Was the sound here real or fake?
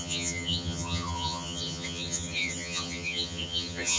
fake